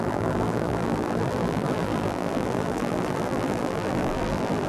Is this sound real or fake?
fake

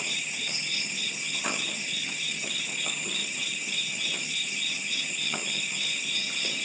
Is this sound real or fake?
fake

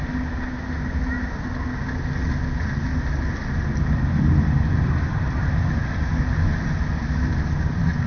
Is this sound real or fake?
real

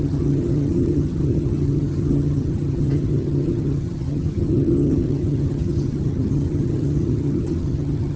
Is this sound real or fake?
fake